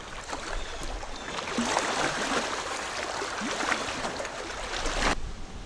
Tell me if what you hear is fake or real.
real